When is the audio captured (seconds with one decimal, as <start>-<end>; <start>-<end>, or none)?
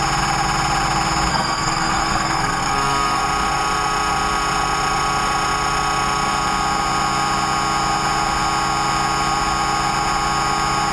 0.0-1.3; 3.2-10.9